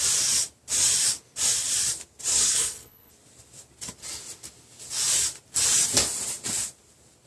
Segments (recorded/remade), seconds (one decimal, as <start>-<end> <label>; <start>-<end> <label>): 0.0-2.3 recorded; 2.3-3.1 remade; 3.1-7.3 recorded